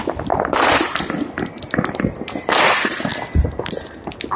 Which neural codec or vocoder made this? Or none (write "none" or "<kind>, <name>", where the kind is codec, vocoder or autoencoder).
none